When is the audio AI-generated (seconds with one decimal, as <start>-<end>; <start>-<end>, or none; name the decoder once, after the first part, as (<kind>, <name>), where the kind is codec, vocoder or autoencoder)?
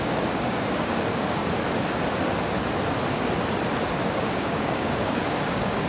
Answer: 0.0-1.4 (codec, DAC); 4.0-5.9